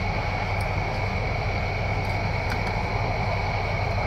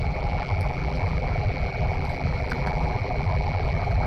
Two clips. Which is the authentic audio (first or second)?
first